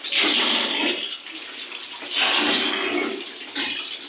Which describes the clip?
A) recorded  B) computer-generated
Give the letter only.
A